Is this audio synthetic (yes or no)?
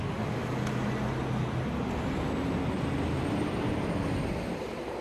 no